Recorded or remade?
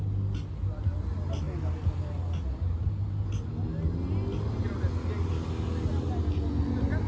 recorded